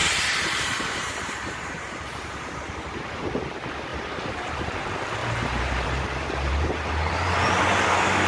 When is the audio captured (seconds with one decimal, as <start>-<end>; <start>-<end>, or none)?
3.3-3.9; 4.6-5.2; 7.6-8.3